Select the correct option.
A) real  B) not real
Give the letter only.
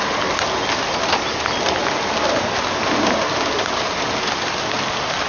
A